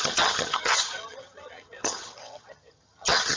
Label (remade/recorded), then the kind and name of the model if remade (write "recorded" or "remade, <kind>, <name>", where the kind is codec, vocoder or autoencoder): remade, vocoder, HiFi-GAN